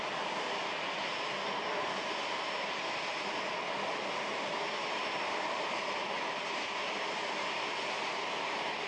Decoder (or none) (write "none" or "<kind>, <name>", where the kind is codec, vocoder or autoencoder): none